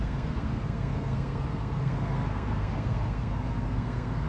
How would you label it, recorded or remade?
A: remade